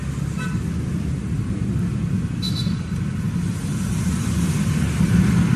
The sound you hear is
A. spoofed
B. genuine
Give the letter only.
B